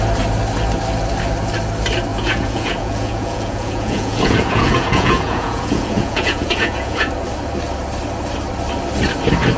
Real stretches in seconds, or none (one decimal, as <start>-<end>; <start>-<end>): 0.0-2.1; 7.1-9.6